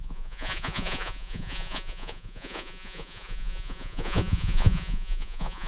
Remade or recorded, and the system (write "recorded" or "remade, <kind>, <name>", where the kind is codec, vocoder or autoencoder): remade, vocoder, Vocos